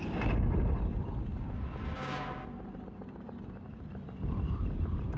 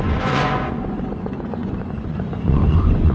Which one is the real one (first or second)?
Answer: first